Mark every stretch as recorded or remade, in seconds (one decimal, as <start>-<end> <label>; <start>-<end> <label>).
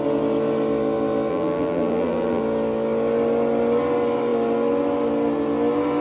0.0-1.3 recorded; 1.3-2.4 remade; 2.4-6.0 recorded